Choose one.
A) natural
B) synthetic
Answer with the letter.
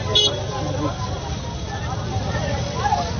A